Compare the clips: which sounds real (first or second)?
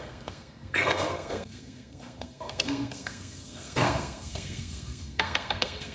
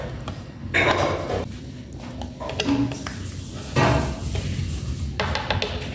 second